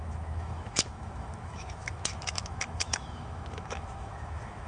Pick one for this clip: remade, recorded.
remade